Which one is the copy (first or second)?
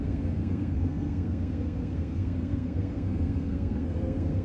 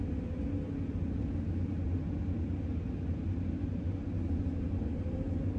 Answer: first